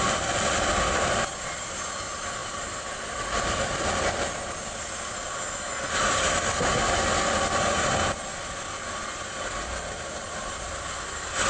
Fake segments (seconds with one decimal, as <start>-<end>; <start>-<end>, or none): none